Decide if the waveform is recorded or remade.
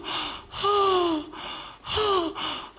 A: recorded